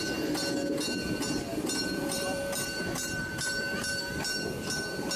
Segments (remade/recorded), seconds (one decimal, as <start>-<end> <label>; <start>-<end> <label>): 0.0-1.5 recorded; 1.5-4.0 remade; 4.0-5.2 recorded